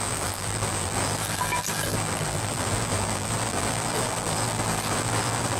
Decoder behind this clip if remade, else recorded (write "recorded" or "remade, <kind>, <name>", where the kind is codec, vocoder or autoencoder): remade, vocoder, BigVGAN v2